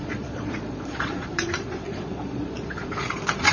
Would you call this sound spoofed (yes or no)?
yes